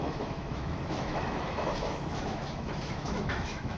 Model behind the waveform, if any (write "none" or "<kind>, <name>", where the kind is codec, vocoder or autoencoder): autoencoder, DAC-VAE